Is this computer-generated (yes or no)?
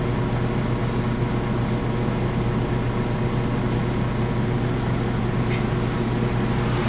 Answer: no